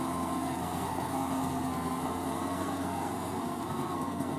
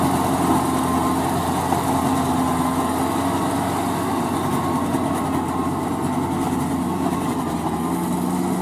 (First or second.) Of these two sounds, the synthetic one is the first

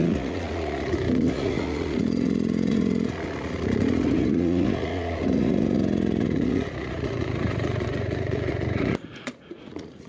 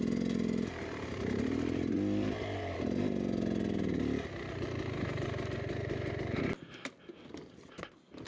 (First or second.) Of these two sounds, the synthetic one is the first